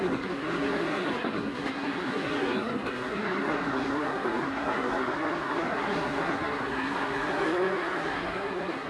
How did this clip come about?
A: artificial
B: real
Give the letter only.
A